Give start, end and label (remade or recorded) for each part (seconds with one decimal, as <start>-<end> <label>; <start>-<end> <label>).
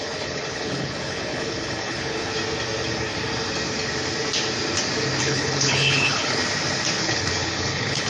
0.0-2.3 remade; 2.3-5.2 recorded; 5.2-6.4 remade; 6.4-7.0 recorded; 7.0-8.1 remade